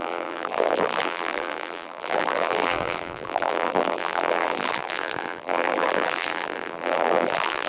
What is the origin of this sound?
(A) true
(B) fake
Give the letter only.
B